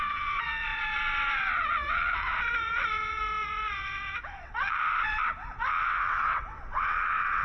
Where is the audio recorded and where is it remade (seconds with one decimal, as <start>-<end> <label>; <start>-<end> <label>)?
0.0-7.4 remade